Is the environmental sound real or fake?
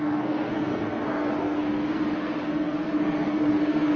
fake